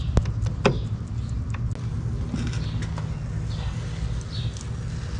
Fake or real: real